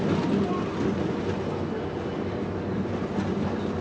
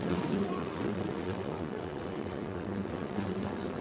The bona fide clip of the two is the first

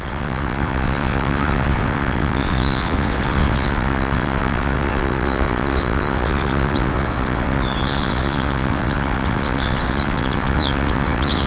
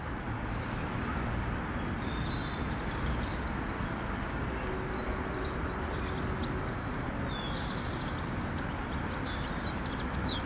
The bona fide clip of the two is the second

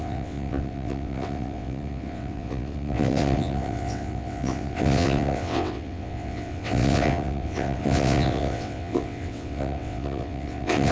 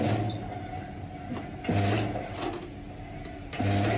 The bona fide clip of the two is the second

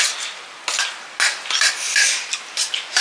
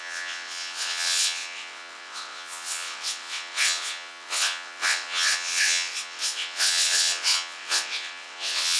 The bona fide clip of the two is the first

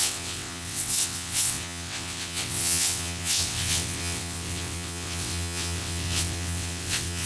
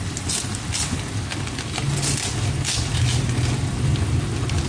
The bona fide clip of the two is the second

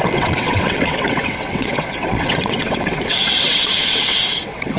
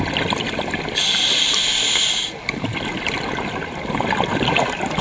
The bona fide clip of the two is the second